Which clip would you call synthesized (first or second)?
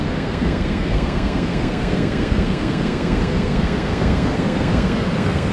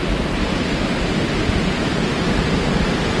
first